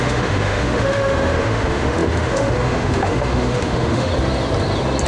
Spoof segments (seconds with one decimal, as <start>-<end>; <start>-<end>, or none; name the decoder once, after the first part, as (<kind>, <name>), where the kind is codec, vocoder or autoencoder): 0.0-4.1 (autoencoder, DAC-VAE)